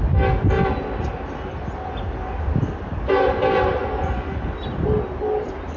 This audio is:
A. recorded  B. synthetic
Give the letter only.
A